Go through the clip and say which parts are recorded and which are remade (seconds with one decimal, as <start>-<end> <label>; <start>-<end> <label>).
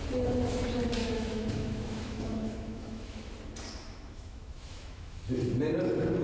0.0-1.0 recorded; 1.0-3.3 remade; 3.3-3.8 recorded; 3.8-5.2 remade; 5.2-6.2 recorded